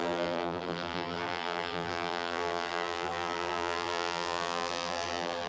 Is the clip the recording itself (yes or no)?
no